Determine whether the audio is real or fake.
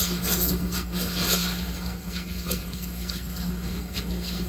fake